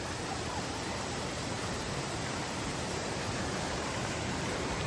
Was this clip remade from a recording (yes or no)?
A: yes